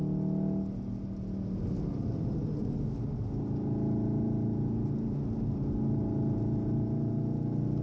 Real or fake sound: real